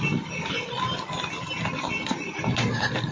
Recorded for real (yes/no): yes